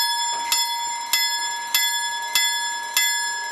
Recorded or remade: recorded